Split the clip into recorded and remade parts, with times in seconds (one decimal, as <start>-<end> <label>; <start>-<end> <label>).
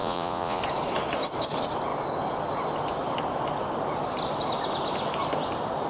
0.0-0.6 remade; 0.6-5.9 recorded